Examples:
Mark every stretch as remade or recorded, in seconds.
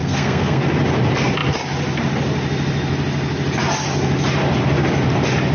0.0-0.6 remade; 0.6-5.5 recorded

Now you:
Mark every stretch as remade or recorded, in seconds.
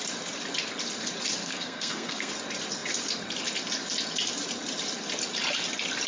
0.0-1.4 recorded; 1.4-2.3 remade; 2.3-6.1 recorded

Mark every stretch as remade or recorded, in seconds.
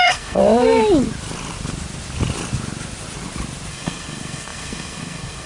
0.0-0.4 remade; 0.4-3.7 recorded; 3.7-5.5 remade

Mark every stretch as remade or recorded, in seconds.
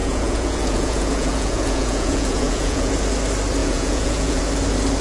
0.0-2.9 remade; 2.9-3.6 recorded; 3.6-4.4 remade; 4.4-5.0 recorded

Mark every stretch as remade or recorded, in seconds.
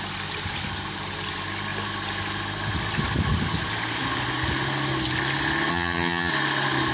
0.0-5.7 recorded; 5.7-6.3 remade; 6.3-6.9 recorded